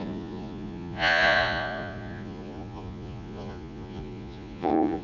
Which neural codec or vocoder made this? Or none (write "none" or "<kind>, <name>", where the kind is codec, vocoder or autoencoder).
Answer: vocoder, Vocos